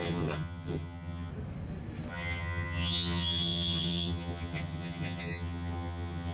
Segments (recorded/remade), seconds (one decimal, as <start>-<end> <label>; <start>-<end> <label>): 0.0-1.3 remade; 1.3-2.1 recorded; 2.1-6.3 remade